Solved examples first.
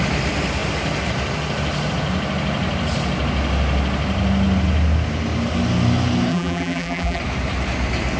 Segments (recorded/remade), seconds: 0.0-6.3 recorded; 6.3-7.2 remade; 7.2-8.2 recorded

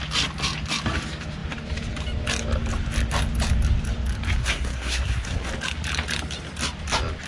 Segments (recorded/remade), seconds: 0.0-4.4 recorded; 4.4-5.5 remade; 5.5-7.3 recorded

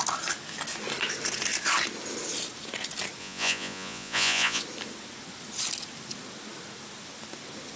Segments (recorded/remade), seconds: 0.0-3.2 recorded; 3.2-4.6 remade; 4.6-7.8 recorded

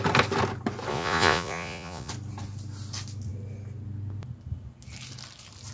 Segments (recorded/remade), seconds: 0.0-0.9 recorded; 0.9-2.1 remade; 2.1-5.7 recorded

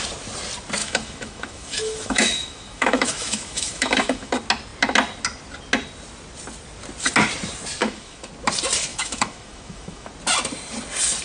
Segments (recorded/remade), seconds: 0.0-0.8 recorded; 0.8-4.3 remade; 4.3-7.8 recorded; 7.8-8.3 remade; 8.3-8.9 recorded; 8.9-10.1 remade; 10.1-11.2 recorded

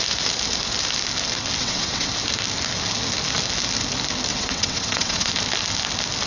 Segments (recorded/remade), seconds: 0.0-1.6 recorded; 1.6-2.1 remade; 2.1-4.3 recorded; 4.3-5.3 remade; 5.3-6.3 recorded

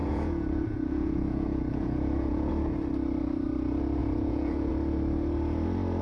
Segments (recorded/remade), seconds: 0.0-2.5 remade; 2.5-4.0 recorded; 4.0-4.7 remade; 4.7-6.0 recorded